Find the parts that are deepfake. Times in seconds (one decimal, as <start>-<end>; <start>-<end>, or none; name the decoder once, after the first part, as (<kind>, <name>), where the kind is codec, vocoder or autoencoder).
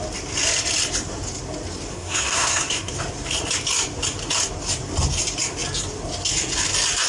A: 1.9-2.9 (codec, SNAC)